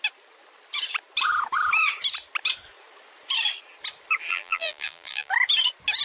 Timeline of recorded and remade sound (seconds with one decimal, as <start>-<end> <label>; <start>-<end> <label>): 0.0-4.3 recorded; 4.3-5.3 remade; 5.3-6.0 recorded